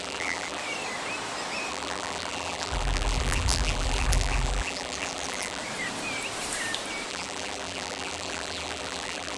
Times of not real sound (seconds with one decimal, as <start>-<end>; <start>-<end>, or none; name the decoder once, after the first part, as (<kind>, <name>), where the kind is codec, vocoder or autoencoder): 0.0-0.6 (vocoder, BigVGAN v2); 1.7-5.6; 7.1-9.4